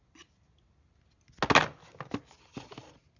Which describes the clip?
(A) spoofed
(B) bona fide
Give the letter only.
B